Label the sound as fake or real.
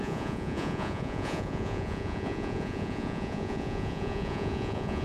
fake